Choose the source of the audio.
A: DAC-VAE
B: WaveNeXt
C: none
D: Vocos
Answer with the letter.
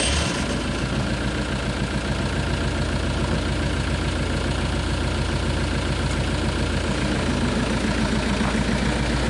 C